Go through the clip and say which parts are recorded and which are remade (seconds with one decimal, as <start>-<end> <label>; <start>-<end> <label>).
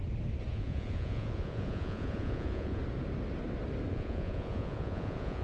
0.0-0.5 recorded; 0.5-2.8 remade; 2.8-3.9 recorded; 3.9-5.4 remade